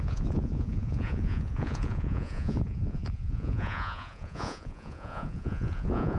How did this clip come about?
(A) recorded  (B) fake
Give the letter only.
B